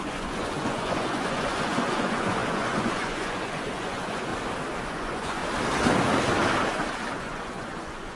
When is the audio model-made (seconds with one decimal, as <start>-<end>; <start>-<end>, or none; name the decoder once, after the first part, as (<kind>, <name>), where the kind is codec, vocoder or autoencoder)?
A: 0.0-4.3 (vocoder, Vocos); 4.9-5.4; 7.2-8.2